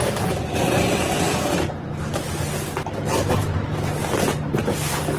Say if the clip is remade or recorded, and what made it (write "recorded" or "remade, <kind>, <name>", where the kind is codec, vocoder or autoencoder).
recorded